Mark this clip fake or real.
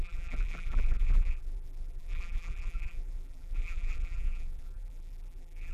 fake